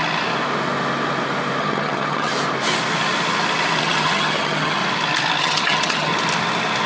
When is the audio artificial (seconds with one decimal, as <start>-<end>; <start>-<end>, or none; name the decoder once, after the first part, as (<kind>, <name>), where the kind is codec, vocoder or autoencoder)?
1.6-2.3 (vocoder, HiFi-GAN); 3.8-4.8; 5.4-6.1